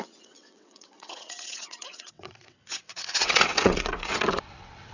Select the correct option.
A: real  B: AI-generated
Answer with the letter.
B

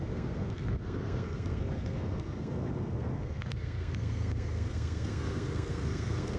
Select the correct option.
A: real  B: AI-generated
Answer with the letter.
B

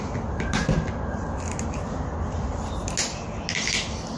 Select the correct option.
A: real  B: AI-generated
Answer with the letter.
A